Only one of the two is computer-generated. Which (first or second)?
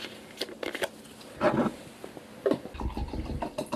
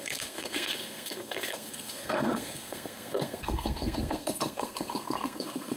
second